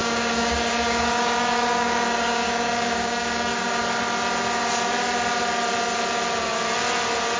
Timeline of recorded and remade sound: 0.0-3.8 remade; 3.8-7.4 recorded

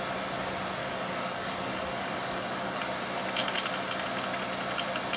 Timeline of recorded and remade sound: 0.0-0.8 recorded; 0.8-2.8 remade; 2.8-5.2 recorded

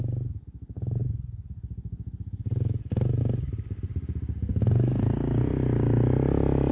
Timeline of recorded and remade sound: 0.0-4.5 recorded; 4.5-5.0 remade; 5.0-6.7 recorded

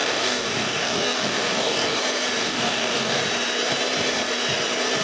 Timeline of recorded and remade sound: 0.0-2.0 remade; 2.0-2.4 recorded; 2.4-3.2 remade; 3.2-5.0 recorded

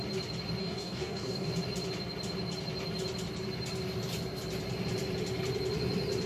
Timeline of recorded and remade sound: 0.0-0.6 recorded; 0.6-1.5 remade; 1.5-6.3 recorded

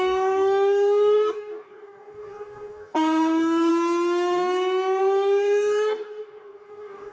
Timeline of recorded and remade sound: 0.0-3.7 remade; 3.7-5.0 recorded; 5.0-7.1 remade